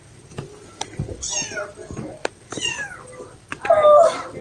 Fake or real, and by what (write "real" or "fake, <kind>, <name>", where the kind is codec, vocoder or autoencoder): real